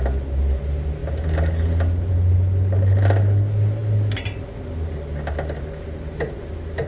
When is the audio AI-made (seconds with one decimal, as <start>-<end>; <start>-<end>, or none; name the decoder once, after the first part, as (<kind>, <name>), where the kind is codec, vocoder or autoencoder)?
none